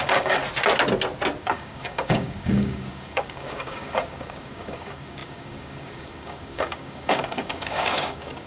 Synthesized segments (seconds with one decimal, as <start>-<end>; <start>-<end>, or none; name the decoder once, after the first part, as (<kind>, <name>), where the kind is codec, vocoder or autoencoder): 0.0-0.4 (codec, DAC); 1.4-8.5